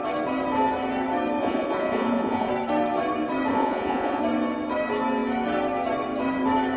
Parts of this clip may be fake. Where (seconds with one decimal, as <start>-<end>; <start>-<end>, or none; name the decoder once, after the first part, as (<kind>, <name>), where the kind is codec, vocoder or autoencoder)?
1.4-2.5 (vocoder, Vocos); 3.5-4.2